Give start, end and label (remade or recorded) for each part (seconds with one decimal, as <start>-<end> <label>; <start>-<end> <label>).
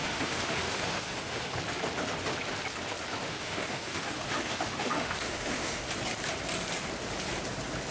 0.0-1.5 remade; 1.5-3.2 recorded; 3.2-5.9 remade; 5.9-7.9 recorded